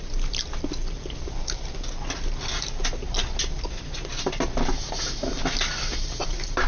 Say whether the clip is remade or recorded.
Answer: recorded